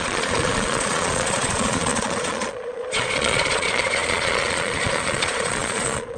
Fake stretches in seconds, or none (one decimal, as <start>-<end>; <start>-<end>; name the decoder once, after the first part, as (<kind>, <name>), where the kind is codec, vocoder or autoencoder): 0.0-6.2 (vocoder, Vocos)